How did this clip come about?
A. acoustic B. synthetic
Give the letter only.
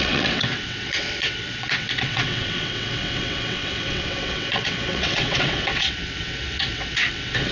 B